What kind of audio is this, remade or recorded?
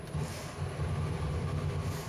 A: remade